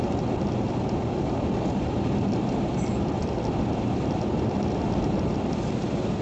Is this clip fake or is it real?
fake